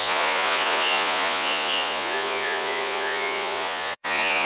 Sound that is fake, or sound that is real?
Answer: fake